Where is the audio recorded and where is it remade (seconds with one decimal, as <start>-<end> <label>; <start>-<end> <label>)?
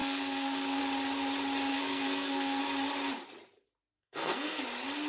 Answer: 0.0-0.8 remade; 0.8-1.7 recorded; 1.7-2.6 remade; 2.6-3.9 recorded; 3.9-4.6 remade; 4.6-5.1 recorded